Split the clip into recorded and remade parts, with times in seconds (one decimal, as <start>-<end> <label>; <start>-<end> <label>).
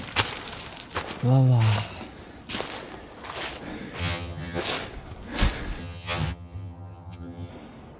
0.0-4.0 recorded; 4.0-4.6 remade; 4.6-5.8 recorded; 5.8-7.5 remade; 7.5-8.0 recorded